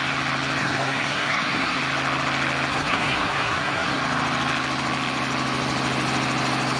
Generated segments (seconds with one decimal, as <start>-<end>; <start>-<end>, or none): 0.6-1.8; 2.7-4.0